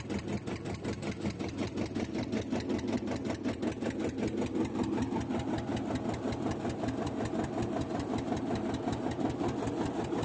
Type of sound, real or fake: real